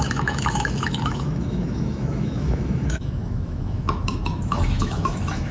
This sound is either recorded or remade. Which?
remade